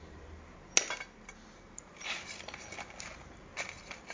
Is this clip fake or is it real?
real